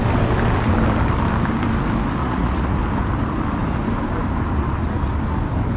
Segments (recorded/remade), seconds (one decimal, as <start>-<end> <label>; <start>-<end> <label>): 0.0-2.2 recorded; 2.2-2.8 remade; 2.8-5.8 recorded